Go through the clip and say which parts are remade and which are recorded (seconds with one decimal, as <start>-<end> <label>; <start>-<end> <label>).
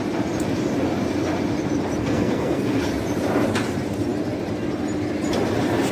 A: 0.0-2.0 recorded; 2.0-2.8 remade; 2.8-5.9 recorded